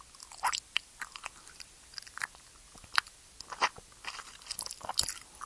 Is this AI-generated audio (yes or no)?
no